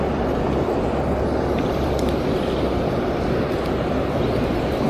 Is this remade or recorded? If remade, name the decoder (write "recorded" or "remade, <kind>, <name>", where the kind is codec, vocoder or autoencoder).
recorded